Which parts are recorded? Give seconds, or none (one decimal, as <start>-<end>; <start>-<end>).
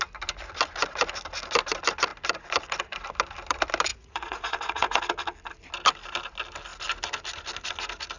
0.0-3.9; 5.0-8.2